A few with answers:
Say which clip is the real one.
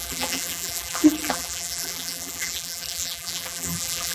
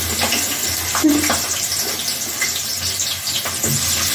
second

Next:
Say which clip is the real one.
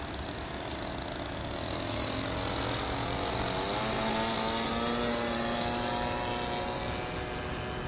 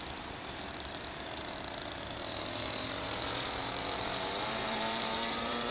first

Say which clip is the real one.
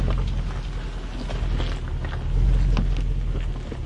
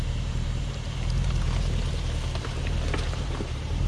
first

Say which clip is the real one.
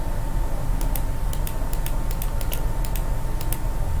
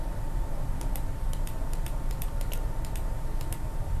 first